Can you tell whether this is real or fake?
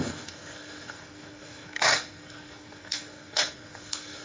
fake